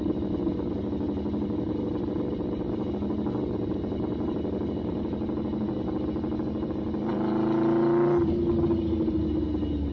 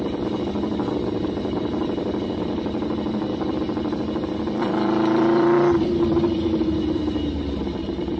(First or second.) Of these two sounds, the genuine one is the first